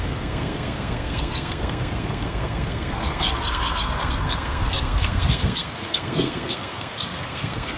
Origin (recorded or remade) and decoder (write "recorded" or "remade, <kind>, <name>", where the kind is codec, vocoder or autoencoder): remade, codec, SNAC